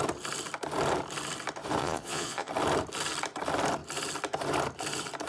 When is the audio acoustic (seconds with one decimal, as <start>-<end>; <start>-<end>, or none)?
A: 0.0-1.8; 2.5-5.3

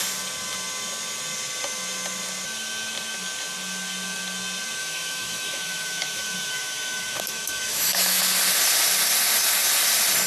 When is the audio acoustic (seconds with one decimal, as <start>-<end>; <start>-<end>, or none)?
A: 0.0-4.8; 8.2-10.3

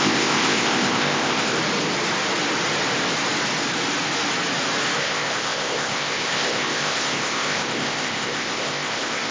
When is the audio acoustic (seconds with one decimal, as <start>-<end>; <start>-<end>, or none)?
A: 1.6-5.0

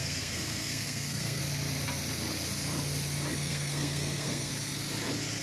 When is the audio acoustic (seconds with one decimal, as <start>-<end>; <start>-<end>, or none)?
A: 1.4-3.3; 4.5-5.4

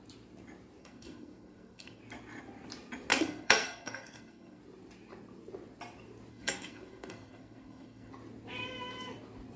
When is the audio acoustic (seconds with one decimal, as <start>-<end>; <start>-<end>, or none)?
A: 0.0-0.8; 2.0-3.1; 4.6-6.3; 8.1-9.6